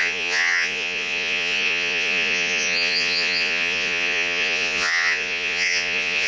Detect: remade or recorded remade